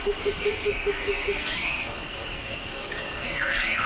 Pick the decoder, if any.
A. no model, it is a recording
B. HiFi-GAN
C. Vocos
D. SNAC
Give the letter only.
D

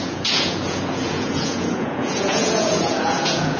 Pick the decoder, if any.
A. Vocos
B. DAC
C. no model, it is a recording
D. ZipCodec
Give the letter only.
A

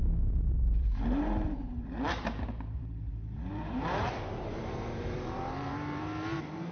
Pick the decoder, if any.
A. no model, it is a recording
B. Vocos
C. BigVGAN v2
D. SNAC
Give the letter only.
C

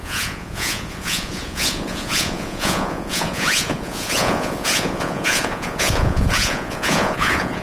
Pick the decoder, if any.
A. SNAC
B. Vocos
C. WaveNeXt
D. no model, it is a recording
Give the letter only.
B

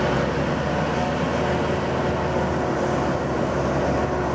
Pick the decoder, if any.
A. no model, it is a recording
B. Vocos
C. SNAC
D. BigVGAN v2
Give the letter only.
A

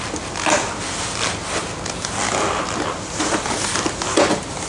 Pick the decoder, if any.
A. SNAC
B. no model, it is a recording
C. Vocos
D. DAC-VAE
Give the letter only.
B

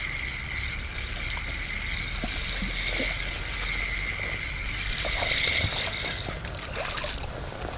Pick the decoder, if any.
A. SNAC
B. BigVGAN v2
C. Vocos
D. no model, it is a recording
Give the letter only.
D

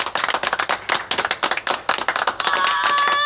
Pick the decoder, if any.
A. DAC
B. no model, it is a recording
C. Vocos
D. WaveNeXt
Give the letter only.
B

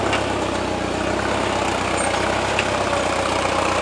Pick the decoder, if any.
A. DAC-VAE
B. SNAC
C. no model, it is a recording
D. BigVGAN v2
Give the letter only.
C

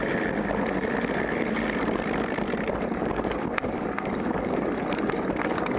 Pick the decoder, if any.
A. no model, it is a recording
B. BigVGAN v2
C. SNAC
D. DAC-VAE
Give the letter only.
B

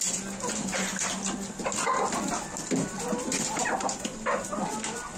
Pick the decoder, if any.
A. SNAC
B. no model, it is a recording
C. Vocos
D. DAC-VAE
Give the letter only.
B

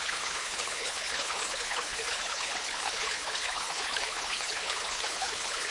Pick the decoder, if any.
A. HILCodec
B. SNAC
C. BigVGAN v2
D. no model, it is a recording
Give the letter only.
A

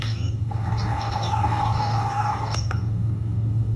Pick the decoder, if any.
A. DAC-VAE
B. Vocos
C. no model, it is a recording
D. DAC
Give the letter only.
D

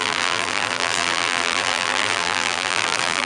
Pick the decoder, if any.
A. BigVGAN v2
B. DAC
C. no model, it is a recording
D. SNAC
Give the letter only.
A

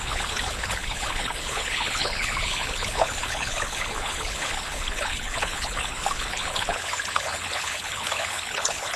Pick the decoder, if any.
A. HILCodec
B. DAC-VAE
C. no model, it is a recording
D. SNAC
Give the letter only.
A